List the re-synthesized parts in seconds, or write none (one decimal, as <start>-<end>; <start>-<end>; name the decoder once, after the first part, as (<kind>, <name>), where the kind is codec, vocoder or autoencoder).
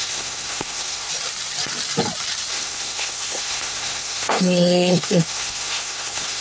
0.0-1.1 (codec, SNAC); 2.5-6.4